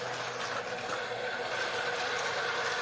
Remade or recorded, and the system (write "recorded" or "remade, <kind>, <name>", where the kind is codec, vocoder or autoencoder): recorded